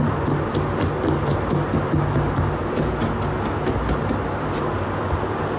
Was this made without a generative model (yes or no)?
yes